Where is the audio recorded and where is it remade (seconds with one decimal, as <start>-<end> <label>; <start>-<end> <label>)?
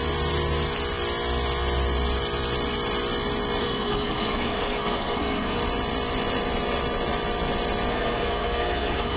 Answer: 0.0-3.6 recorded; 3.6-5.6 remade; 5.6-7.9 recorded; 7.9-9.2 remade